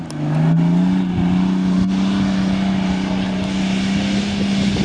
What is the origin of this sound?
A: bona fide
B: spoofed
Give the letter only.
A